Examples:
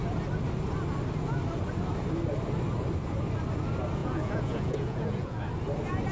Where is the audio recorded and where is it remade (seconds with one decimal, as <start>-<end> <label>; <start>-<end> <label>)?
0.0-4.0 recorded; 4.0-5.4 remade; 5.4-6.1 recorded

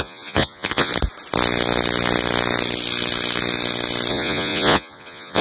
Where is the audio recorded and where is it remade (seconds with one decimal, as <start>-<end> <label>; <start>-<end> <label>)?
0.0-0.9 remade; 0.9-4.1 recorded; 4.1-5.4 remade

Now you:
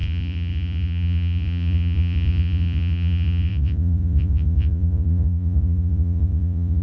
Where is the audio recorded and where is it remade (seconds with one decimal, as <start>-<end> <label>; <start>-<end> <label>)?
0.0-6.8 remade

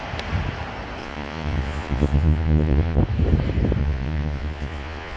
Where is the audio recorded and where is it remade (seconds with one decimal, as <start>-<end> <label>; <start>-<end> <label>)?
0.0-1.0 recorded; 1.0-3.0 remade; 3.0-3.8 recorded; 3.8-5.2 remade

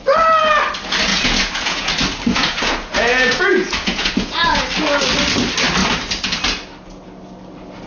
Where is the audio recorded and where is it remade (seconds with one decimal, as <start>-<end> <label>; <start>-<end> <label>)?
0.0-1.1 recorded; 1.1-1.9 remade; 1.9-2.3 recorded; 2.3-4.6 remade; 4.6-7.9 recorded

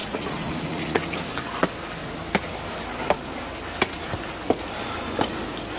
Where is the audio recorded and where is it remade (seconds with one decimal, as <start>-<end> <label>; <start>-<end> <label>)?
0.0-1.0 remade; 1.0-5.8 recorded